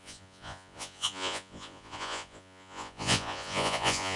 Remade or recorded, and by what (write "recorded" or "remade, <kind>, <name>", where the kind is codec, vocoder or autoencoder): remade, vocoder, Vocos